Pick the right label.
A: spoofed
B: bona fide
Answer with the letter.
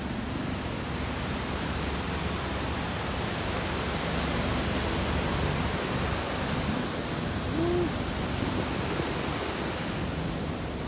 B